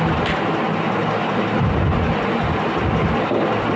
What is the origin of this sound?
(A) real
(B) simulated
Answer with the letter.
A